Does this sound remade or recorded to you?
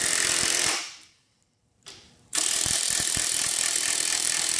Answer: remade